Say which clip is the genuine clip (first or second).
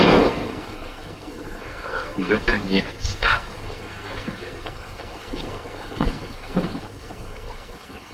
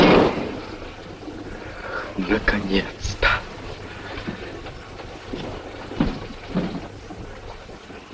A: second